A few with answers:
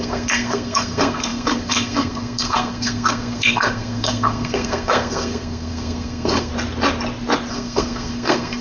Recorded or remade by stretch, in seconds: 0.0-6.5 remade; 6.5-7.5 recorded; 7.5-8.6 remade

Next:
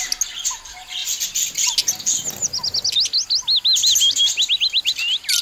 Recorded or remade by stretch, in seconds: 0.0-5.4 recorded

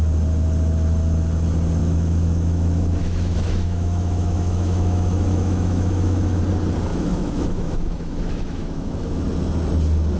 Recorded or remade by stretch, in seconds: 0.0-1.8 recorded; 1.8-6.4 remade; 6.4-6.9 recorded; 6.9-9.2 remade; 9.2-10.2 recorded

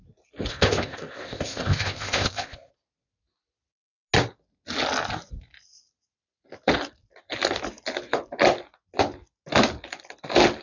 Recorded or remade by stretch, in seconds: 0.0-0.5 recorded; 0.5-2.7 remade; 2.7-10.6 recorded

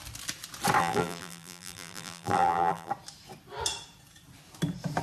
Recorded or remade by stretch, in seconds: 0.0-0.8 recorded; 0.8-2.9 remade; 2.9-5.0 recorded